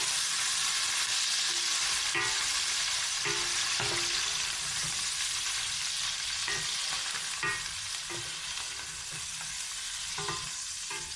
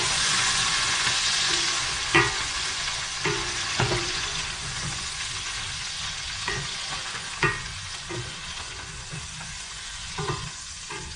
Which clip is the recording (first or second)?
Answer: first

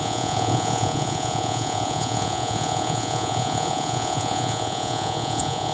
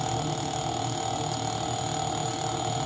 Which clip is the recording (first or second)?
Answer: second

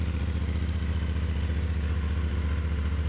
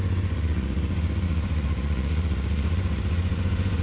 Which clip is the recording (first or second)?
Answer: first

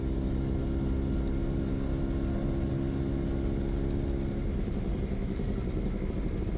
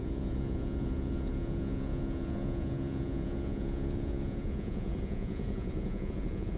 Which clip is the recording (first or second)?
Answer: first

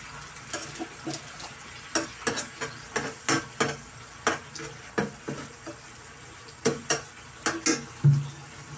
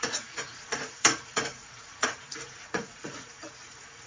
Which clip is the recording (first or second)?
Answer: first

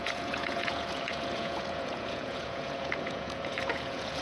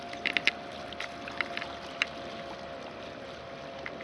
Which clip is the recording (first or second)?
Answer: second